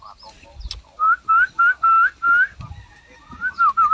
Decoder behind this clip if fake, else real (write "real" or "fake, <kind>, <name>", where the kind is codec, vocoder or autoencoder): real